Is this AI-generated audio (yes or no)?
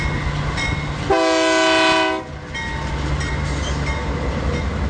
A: no